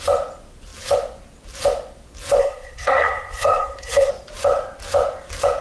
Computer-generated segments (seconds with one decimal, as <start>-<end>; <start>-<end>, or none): 2.4-4.1